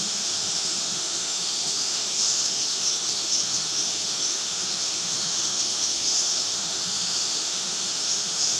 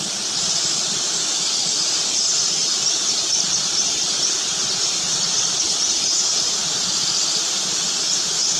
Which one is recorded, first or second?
second